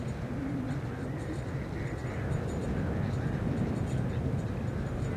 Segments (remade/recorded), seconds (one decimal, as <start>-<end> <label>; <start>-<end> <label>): 0.0-2.0 remade; 2.0-5.2 recorded